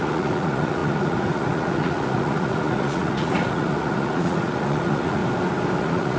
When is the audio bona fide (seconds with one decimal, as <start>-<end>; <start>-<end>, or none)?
5.2-5.8